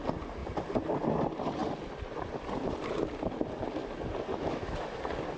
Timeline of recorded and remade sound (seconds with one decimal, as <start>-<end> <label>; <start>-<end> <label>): 0.0-4.3 recorded; 4.3-5.0 remade; 5.0-5.4 recorded